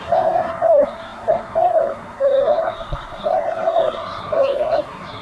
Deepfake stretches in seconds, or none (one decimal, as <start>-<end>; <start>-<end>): 0.0-5.2